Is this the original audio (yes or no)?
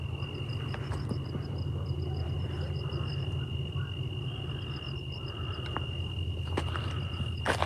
yes